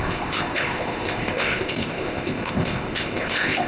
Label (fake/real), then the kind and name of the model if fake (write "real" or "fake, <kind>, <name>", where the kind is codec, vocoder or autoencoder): fake, codec, ZipCodec